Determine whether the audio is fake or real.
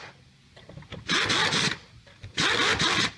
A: real